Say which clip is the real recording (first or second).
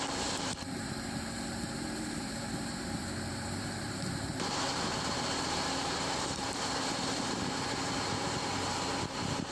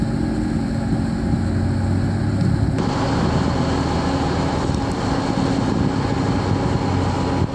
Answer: second